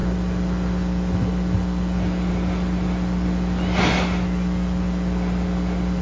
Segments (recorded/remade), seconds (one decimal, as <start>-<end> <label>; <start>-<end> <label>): 0.0-6.0 recorded